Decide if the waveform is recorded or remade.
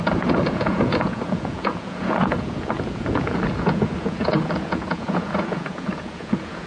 remade